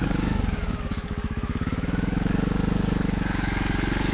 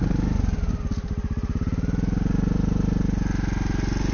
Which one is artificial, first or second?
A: first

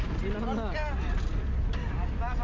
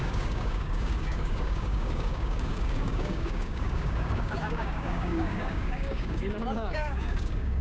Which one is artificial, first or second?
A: second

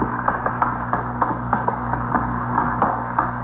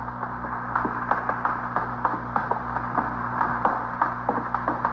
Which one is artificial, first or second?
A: first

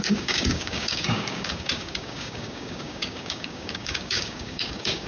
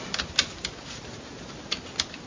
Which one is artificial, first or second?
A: first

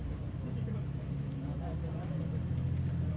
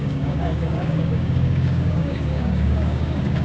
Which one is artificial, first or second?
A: second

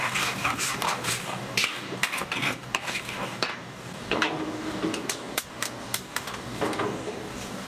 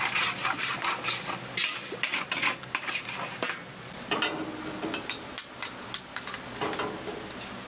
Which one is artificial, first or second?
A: first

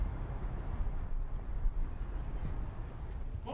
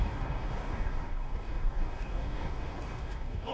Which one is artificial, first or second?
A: second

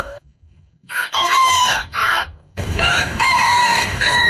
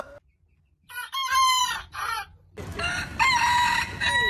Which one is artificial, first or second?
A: first